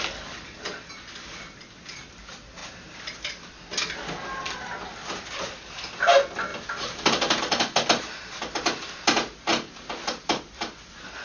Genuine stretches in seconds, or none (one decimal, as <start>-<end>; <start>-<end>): 0.0-2.6; 3.4-6.5; 7.6-11.2